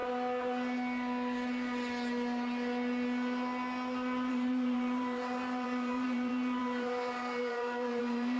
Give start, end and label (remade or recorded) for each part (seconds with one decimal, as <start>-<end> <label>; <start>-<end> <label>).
0.0-4.3 recorded; 4.3-8.4 remade